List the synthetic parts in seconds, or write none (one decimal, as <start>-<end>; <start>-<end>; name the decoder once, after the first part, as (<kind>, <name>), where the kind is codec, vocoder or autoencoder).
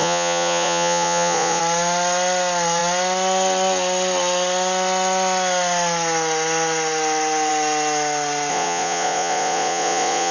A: 0.0-1.6 (vocoder, Vocos); 8.5-10.3